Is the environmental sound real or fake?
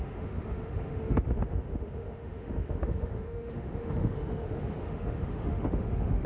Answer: fake